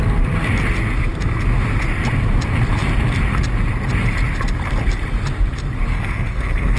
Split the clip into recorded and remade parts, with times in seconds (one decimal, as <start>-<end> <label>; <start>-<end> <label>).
0.0-5.9 recorded; 5.9-6.8 remade